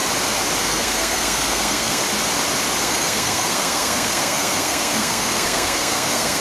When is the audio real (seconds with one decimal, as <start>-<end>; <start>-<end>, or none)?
0.0-0.6; 2.0-2.8